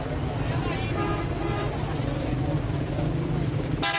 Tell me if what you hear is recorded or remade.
recorded